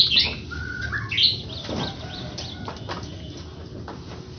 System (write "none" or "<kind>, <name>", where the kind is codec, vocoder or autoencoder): none